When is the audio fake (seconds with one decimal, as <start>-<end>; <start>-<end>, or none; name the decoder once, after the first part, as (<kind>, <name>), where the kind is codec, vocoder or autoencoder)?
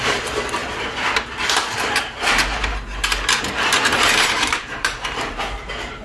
0.0-0.6 (vocoder, BigVGAN v2); 4.2-6.0